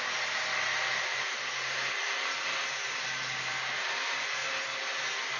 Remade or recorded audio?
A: recorded